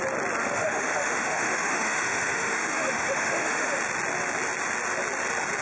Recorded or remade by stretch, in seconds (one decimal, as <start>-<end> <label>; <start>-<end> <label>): 0.0-0.4 recorded; 0.4-3.8 remade; 3.8-5.6 recorded